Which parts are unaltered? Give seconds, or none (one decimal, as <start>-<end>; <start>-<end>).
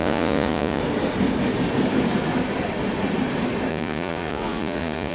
0.8-3.7